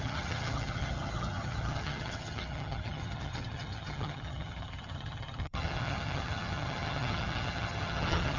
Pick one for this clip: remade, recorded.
remade